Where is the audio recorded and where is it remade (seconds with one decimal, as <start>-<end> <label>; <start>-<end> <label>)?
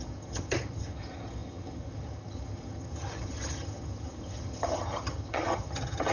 0.0-6.1 remade